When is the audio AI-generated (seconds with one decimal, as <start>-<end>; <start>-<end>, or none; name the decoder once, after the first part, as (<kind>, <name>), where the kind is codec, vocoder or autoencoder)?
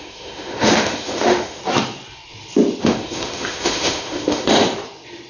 0.0-1.6 (autoencoder, DAC-VAE); 2.8-4.6